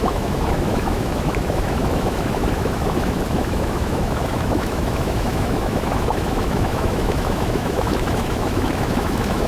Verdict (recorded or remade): remade